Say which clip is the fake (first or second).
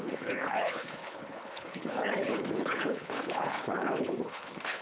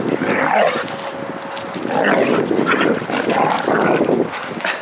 first